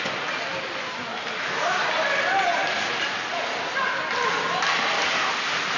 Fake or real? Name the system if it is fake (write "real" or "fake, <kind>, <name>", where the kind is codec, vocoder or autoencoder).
real